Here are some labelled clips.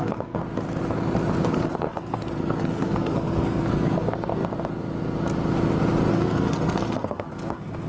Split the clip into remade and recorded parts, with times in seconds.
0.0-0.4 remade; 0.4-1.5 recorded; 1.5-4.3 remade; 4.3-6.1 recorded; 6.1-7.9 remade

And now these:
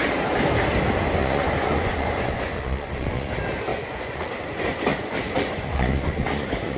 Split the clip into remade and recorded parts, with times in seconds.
0.0-1.2 recorded; 1.2-3.3 remade; 3.3-3.7 recorded; 3.7-4.3 remade; 4.3-4.9 recorded; 4.9-6.8 remade

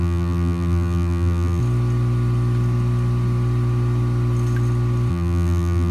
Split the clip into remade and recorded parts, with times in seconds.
0.0-1.6 remade; 1.6-5.1 recorded; 5.1-5.9 remade